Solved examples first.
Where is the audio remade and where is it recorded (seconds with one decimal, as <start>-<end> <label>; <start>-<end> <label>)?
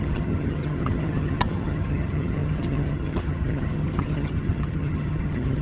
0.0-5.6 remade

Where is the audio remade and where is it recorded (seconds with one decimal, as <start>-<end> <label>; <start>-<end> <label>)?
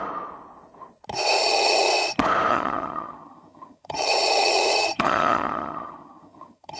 0.0-1.4 recorded; 1.4-1.9 remade; 1.9-2.5 recorded; 2.5-6.8 remade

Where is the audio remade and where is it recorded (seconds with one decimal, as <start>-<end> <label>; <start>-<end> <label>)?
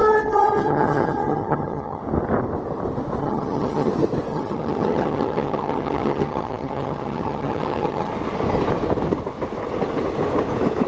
0.0-2.0 remade; 2.0-3.2 recorded; 3.2-3.9 remade; 3.9-4.3 recorded; 4.3-8.1 remade; 8.1-10.9 recorded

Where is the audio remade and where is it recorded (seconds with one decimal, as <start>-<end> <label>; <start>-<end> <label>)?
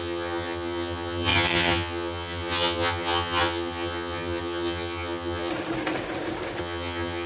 0.0-5.5 remade; 5.5-6.6 recorded; 6.6-7.3 remade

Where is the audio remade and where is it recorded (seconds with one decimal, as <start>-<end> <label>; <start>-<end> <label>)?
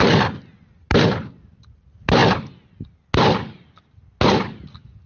0.0-5.1 recorded